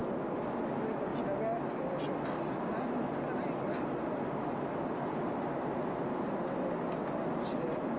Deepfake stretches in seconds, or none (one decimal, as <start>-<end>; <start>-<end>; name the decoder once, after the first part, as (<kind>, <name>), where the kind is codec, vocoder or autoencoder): none